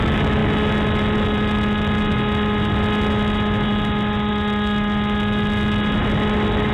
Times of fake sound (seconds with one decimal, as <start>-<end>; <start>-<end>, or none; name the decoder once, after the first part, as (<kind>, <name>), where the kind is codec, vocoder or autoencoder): none

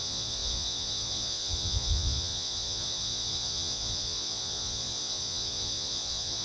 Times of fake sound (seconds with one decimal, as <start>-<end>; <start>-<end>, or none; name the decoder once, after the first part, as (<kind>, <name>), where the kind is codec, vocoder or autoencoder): 0.0-6.4 (vocoder, Vocos)

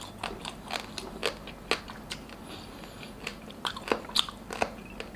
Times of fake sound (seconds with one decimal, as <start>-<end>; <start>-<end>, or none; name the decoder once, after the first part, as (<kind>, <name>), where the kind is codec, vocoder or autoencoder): 3.3-3.9 (vocoder, BigVGAN v2)

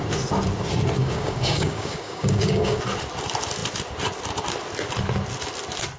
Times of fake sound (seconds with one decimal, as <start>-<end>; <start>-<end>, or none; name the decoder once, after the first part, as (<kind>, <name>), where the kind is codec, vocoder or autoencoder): 1.0-2.8 (codec, DAC)

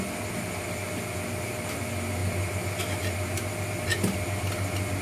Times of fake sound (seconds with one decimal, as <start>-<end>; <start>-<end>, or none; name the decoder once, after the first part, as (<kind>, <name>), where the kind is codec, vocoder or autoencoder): none

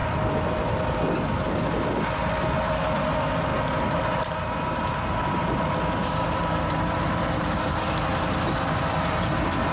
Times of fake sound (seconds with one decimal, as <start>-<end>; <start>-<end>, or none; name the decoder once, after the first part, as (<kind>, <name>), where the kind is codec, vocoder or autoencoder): 3.5-5.6 (vocoder, BigVGAN v2); 6.0-7.9

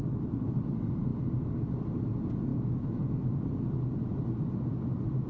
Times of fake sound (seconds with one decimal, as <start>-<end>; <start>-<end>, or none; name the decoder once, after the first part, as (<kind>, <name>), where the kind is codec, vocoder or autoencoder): 2.5-3.0 (autoencoder, DAC-VAE)

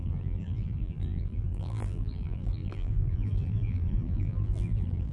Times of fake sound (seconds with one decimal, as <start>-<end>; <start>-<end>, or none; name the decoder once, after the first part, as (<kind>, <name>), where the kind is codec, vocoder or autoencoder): 0.0-5.1 (vocoder, BigVGAN v2)